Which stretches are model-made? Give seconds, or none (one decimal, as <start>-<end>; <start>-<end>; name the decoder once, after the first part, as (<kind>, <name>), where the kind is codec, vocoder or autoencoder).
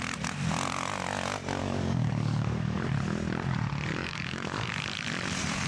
1.6-2.9 (codec, DAC); 3.9-4.7